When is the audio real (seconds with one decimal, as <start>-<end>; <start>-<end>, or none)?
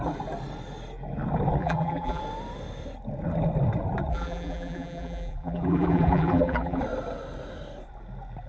0.0-1.6; 2.2-4.1; 6.8-8.5